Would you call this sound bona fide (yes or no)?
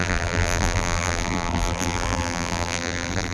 no